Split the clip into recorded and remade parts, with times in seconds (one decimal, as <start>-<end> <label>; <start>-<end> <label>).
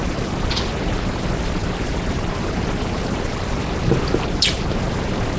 0.0-5.4 recorded